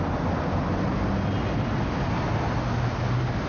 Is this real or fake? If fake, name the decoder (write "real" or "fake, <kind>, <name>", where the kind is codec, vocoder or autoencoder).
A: real